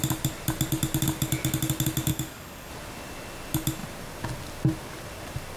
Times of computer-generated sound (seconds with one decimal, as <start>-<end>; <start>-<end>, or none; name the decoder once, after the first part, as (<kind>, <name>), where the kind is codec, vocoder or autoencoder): 2.1-2.7 (codec, DAC)